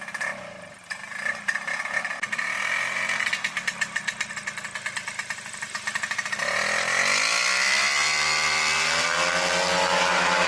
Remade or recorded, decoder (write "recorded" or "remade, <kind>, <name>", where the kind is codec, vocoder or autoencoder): recorded